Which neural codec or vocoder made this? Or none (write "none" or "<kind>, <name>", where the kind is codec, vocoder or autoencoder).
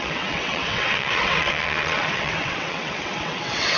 vocoder, WaveNeXt